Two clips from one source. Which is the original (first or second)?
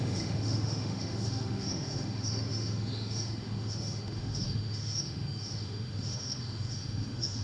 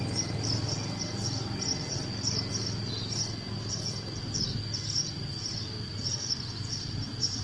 second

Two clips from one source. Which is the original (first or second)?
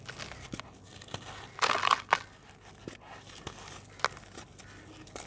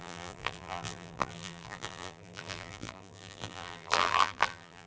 first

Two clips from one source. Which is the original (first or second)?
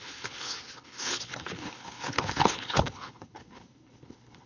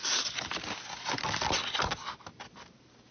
second